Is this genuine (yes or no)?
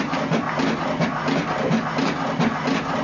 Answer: yes